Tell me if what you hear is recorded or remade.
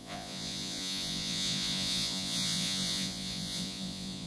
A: remade